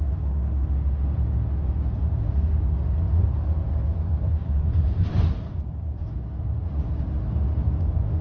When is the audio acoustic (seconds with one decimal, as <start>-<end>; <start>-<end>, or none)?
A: 0.0-4.4; 6.0-8.2